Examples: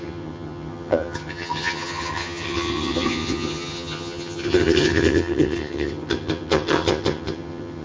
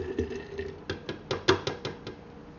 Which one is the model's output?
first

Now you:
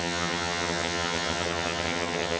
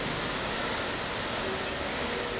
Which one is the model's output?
first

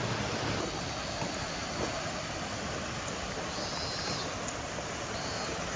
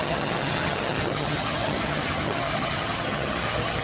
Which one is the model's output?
second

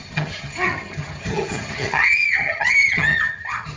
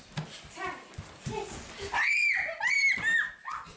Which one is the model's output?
first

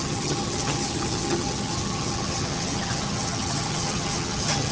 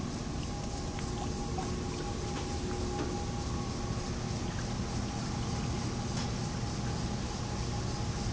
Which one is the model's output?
first